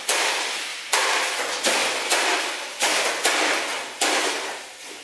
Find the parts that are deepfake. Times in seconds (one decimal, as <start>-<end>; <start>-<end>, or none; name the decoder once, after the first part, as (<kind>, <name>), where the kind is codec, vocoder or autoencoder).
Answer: 0.7-1.4 (vocoder, BigVGAN v2); 1.8-3.1; 3.7-4.3